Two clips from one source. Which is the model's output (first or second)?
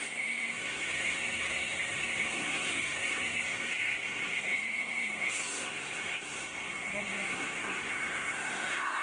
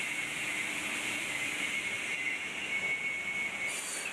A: first